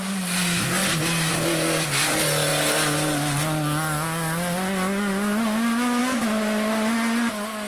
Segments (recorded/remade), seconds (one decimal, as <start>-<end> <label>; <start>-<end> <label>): 0.0-7.7 recorded

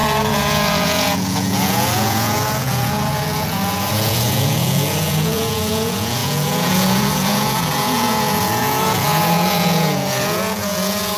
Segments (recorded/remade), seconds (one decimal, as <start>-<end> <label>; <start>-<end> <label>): 0.0-11.2 remade